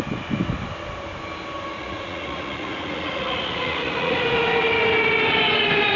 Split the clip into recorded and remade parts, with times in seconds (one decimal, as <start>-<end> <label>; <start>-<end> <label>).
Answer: 0.0-1.7 recorded; 1.7-4.2 remade; 4.2-6.0 recorded